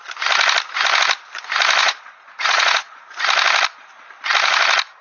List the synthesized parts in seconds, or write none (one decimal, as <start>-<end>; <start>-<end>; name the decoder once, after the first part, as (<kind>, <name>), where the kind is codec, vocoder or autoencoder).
1.8-3.2 (vocoder, Vocos)